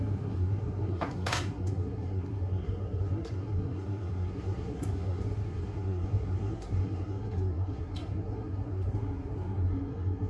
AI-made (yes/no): yes